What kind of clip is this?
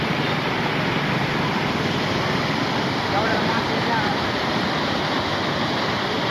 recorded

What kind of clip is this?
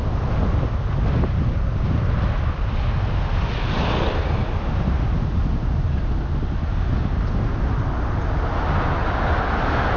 recorded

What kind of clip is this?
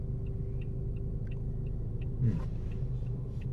recorded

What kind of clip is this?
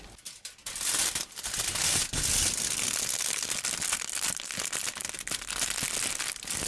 recorded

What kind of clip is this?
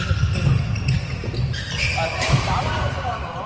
remade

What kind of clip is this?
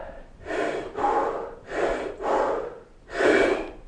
remade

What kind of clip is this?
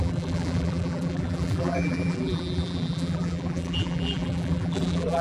remade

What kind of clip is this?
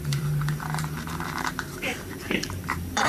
remade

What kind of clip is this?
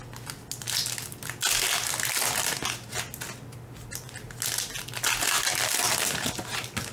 recorded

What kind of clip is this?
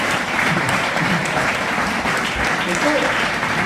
remade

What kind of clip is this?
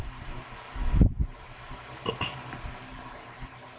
remade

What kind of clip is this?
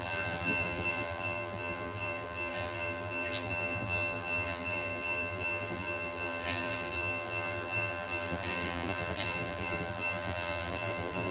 remade